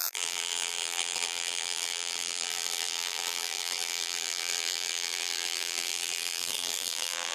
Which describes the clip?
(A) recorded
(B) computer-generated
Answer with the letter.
B